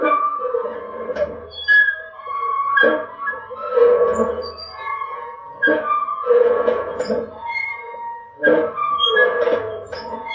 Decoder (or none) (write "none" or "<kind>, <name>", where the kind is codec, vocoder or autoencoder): vocoder, Vocos